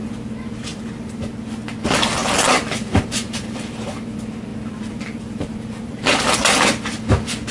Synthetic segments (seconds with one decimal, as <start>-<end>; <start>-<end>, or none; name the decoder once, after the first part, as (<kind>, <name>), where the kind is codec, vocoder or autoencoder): 0.7-1.4 (vocoder, BigVGAN v2); 2.2-3.8; 4.5-6.0